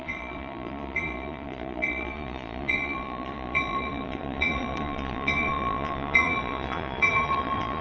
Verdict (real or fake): fake